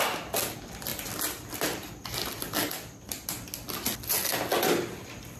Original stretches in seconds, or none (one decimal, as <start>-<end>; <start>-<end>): 0.0-5.4